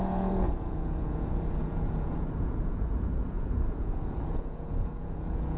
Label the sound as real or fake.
fake